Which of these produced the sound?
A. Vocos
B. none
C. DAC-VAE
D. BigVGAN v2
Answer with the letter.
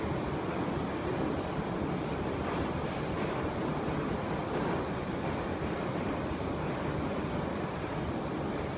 B